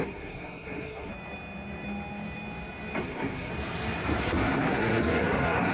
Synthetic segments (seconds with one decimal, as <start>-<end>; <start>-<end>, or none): 0.0-1.1; 3.0-3.5; 4.2-5.7